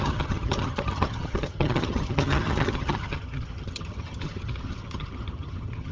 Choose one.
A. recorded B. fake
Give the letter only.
B